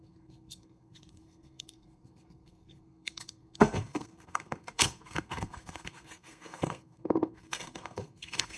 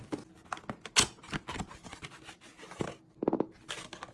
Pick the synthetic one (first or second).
first